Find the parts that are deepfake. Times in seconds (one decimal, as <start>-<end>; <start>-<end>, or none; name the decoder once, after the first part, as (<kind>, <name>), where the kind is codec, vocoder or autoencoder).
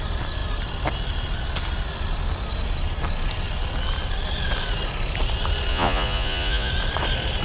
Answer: 5.7-6.7 (vocoder, Vocos)